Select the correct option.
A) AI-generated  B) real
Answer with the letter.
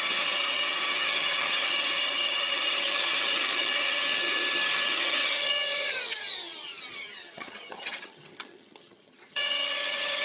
A